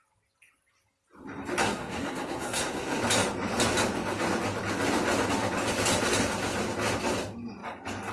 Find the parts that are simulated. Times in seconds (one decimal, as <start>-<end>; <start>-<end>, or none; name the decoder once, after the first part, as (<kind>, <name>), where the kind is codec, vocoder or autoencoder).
1.6-3.0 (codec, SNAC)

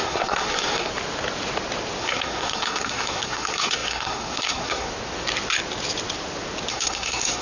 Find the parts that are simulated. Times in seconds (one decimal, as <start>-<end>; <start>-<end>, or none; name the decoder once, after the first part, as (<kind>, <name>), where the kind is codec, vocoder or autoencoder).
0.0-0.9 (codec, SNAC); 2.0-4.9; 6.7-7.4

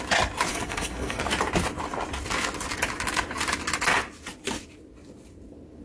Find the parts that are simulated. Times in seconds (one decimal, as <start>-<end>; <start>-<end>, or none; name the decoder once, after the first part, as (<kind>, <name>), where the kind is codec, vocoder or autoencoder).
0.5-1.2 (codec, SNAC)

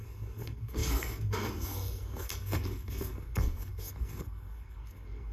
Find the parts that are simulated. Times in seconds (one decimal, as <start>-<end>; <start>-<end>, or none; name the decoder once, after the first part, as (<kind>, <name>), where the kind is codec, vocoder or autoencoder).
0.0-5.3 (codec, SNAC)

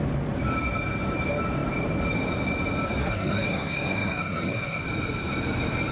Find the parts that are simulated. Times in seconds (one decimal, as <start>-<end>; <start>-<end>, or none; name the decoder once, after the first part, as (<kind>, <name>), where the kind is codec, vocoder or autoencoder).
3.0-4.8 (codec, SNAC)

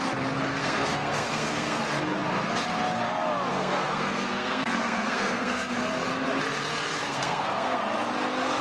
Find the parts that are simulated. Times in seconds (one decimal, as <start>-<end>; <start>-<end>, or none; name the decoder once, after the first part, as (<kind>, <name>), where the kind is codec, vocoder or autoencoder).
0.6-1.8 (codec, SNAC); 3.5-5.7; 7.0-7.8

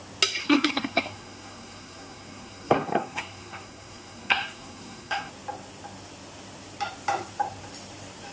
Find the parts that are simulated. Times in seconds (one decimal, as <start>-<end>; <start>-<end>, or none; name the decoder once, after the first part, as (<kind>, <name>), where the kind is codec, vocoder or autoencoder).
0.4-5.3 (codec, SNAC)

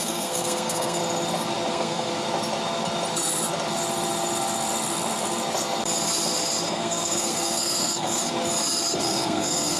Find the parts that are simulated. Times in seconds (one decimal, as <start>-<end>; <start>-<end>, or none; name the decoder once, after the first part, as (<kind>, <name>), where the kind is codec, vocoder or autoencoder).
0.0-1.0 (codec, SNAC); 1.7-2.1; 6.7-8.2; 9.0-9.8